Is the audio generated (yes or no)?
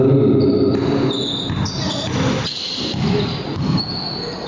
no